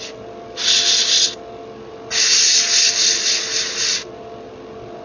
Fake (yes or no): no